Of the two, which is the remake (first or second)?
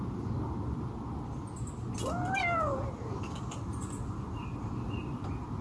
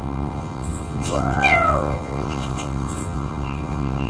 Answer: second